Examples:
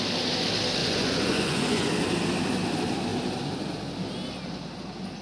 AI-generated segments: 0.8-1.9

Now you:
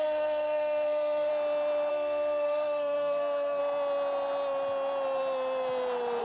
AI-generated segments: 0.0-1.3; 1.9-3.6

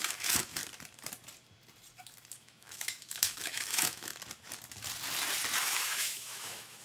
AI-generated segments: 0.0-0.6; 2.4-4.1; 5.6-6.8

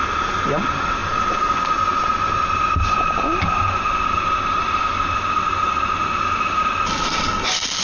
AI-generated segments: none

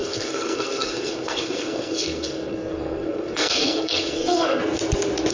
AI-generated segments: 0.0-4.6

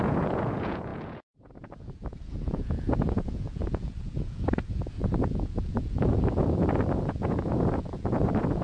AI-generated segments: 0.0-8.6